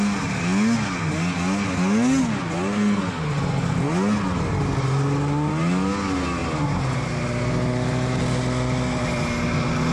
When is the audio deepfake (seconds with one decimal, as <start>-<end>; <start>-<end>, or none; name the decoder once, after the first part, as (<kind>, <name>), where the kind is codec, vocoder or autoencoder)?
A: none